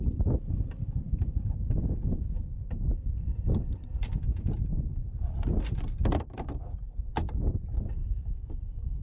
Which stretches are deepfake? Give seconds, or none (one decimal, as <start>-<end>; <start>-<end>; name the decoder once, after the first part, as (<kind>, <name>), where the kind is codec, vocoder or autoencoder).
none